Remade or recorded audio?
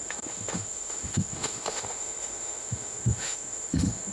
remade